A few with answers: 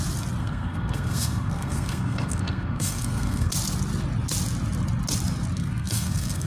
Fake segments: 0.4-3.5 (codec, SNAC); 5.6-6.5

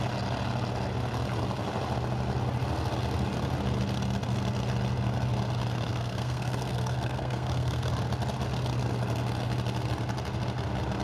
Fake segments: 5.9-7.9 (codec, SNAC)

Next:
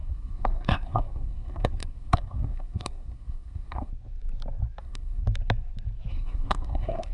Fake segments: 0.0-3.9 (codec, SNAC); 4.8-5.2; 6.1-7.1